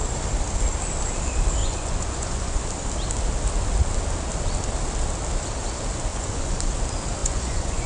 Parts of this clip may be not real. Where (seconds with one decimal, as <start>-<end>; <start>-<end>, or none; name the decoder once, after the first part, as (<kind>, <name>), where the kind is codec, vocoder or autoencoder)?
1.6-2.6 (vocoder, Vocos); 6.1-6.6; 7.2-7.9